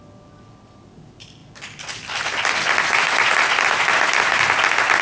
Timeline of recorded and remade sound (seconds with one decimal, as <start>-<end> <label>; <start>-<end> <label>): 0.0-5.0 recorded